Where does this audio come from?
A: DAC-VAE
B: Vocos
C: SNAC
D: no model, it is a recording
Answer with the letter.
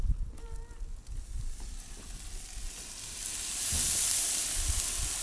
D